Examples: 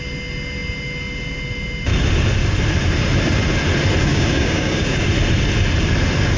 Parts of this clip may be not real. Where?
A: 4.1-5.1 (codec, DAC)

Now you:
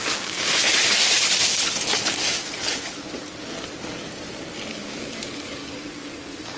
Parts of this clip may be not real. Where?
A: 0.0-0.7 (codec, DAC); 4.7-6.6

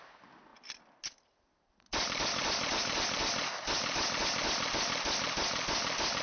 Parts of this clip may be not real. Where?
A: none

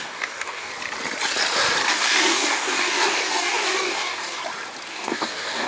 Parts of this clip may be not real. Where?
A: 0.0-0.7 (codec, DAC); 1.9-4.4; 4.9-5.7

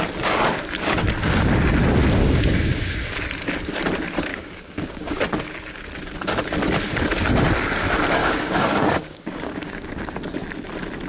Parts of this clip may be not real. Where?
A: 2.2-3.1 (codec, DAC); 4.3-5.2; 8.2-10.1

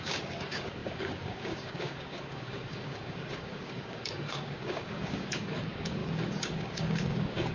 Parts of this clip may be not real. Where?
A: 0.0-7.5 (codec, DAC)